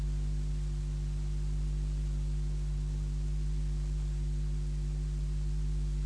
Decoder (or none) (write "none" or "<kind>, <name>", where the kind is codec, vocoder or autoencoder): none